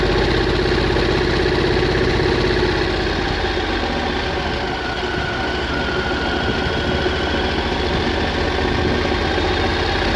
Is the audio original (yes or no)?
yes